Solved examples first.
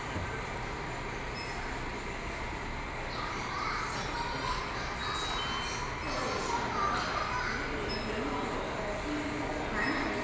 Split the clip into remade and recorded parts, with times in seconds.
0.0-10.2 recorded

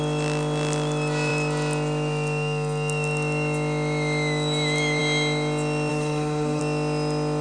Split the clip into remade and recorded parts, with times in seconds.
0.0-5.9 recorded; 5.9-6.6 remade; 6.6-7.4 recorded

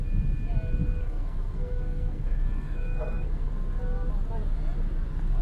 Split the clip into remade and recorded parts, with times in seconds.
0.0-1.0 recorded; 1.0-3.5 remade; 3.5-5.4 recorded